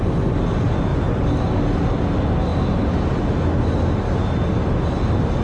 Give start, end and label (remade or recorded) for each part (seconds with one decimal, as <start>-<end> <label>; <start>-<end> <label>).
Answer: 0.0-5.4 recorded